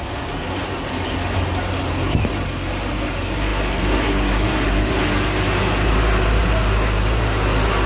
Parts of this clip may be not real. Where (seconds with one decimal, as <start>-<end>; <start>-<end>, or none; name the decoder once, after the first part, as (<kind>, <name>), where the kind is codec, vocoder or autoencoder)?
none